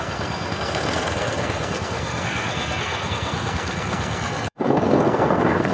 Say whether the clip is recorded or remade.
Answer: remade